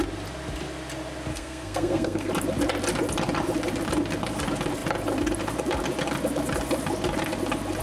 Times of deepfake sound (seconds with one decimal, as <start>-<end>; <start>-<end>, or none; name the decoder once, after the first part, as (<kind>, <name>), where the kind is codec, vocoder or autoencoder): 1.3-2.3 (codec, SNAC)